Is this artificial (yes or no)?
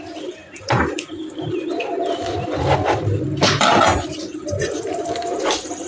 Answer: yes